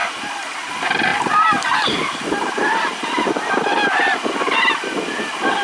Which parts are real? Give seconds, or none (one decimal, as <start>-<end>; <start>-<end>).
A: 0.7-1.1; 3.5-5.6